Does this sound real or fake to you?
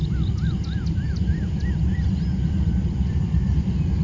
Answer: real